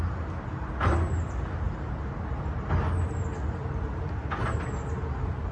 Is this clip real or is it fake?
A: real